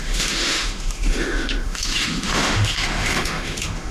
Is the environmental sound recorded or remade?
remade